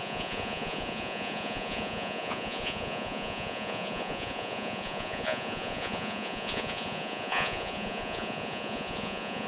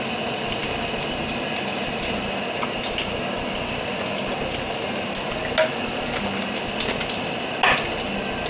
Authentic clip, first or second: second